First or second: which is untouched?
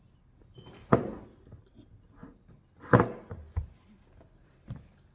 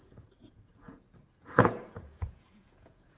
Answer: first